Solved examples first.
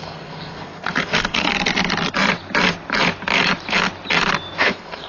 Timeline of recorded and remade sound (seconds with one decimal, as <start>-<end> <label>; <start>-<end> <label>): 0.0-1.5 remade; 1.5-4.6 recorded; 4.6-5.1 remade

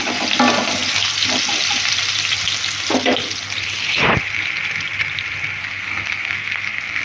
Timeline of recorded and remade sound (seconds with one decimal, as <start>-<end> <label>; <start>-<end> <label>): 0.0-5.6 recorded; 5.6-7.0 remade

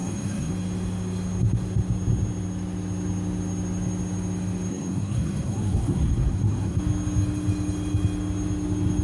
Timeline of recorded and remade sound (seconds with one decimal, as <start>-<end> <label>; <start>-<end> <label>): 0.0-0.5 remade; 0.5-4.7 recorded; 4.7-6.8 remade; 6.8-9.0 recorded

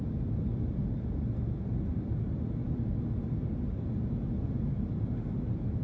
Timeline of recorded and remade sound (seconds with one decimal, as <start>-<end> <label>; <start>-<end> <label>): 0.0-5.8 recorded

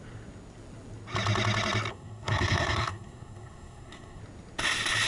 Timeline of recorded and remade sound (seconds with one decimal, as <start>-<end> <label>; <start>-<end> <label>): 0.0-1.9 recorded; 1.9-4.2 remade; 4.2-5.1 recorded